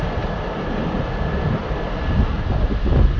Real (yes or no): yes